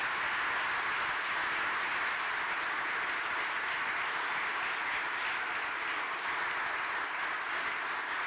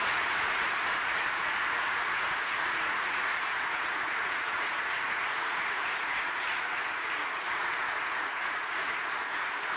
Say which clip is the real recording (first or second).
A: first